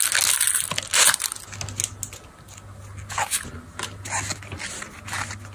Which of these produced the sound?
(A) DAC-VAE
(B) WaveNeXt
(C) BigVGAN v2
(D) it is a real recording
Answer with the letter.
D